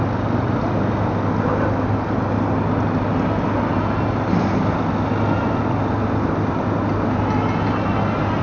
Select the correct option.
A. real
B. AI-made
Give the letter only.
A